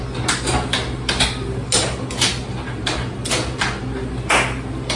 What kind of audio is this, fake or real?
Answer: real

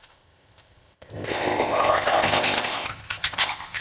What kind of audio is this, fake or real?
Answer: fake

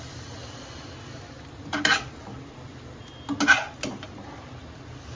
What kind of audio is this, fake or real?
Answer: real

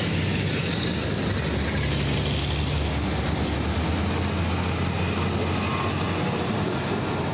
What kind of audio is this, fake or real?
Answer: real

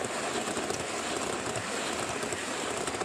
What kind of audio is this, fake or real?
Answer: real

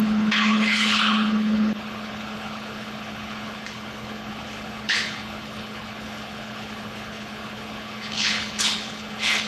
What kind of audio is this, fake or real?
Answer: fake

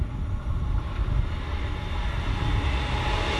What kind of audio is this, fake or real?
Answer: real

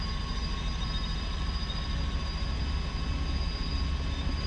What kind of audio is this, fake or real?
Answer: real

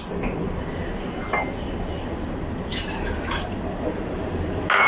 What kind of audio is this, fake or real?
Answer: real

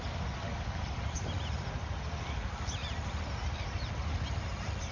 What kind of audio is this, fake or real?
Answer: real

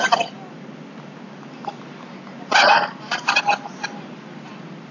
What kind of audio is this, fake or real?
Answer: real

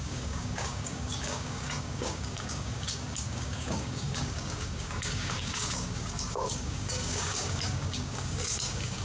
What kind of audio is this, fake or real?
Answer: fake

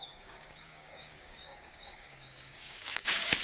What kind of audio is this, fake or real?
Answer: fake